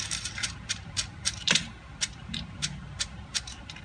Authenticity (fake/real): fake